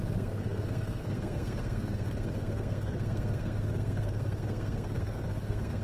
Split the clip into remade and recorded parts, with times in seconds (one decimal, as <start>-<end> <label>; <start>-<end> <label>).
0.0-5.8 remade